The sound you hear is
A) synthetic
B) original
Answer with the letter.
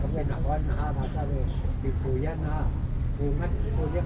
B